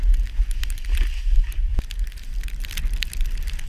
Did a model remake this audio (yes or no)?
no